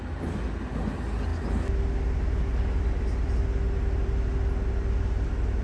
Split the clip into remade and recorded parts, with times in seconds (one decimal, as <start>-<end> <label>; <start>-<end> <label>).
0.0-5.6 recorded